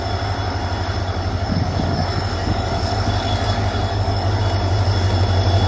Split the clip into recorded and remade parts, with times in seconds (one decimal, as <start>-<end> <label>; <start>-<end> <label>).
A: 0.0-1.0 recorded; 1.0-4.4 remade; 4.4-5.7 recorded